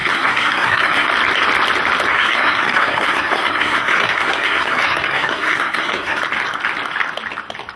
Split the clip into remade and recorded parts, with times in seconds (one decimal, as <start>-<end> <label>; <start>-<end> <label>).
0.0-1.1 remade; 1.1-2.1 recorded; 2.1-6.2 remade; 6.2-7.8 recorded